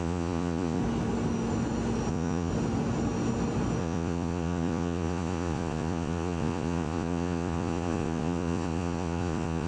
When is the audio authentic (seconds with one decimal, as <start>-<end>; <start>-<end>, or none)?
0.8-2.1; 2.5-3.8